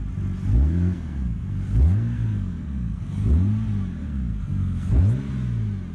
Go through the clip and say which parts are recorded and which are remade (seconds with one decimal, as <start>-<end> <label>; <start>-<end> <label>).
0.0-0.5 recorded; 0.5-3.3 remade; 3.3-4.0 recorded; 4.0-5.0 remade; 5.0-5.9 recorded